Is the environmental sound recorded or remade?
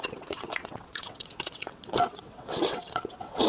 remade